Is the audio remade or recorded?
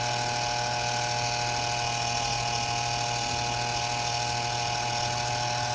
recorded